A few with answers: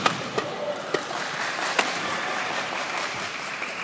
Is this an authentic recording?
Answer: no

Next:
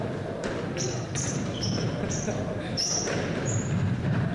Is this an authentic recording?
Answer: no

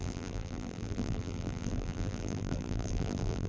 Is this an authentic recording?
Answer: no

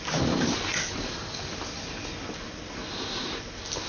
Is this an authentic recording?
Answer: yes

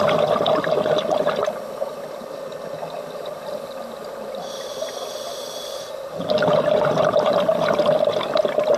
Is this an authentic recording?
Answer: yes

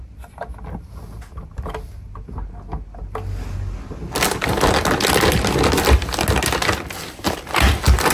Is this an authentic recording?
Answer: yes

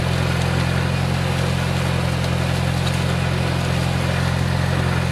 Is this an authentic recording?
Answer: yes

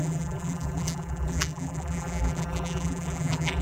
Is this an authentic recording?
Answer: no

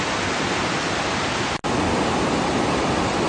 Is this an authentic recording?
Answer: yes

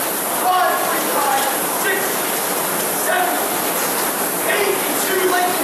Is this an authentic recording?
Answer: yes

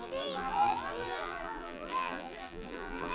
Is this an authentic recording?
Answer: no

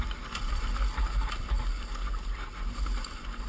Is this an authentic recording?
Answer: yes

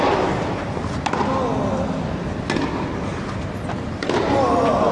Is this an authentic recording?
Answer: yes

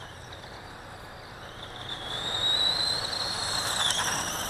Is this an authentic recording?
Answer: no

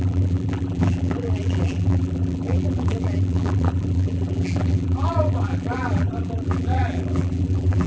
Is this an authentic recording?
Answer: no